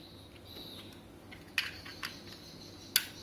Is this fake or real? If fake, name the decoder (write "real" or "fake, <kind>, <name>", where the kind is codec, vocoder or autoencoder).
real